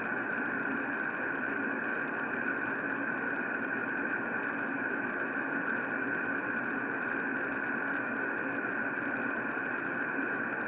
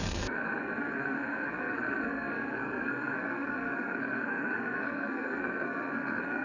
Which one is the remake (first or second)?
second